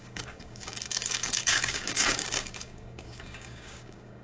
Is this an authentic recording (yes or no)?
no